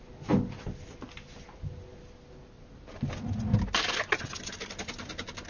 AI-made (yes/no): no